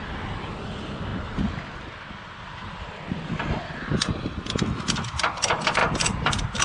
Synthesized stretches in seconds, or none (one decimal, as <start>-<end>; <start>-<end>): 5.8-6.6

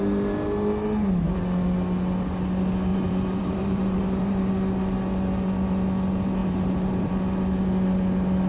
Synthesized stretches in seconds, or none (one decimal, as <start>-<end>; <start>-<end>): 2.9-4.5; 6.4-7.1

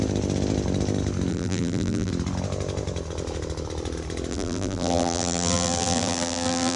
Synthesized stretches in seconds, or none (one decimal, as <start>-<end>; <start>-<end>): 1.3-2.1; 4.3-6.8